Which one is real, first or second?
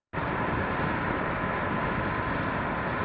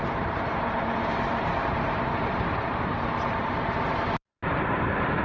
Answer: first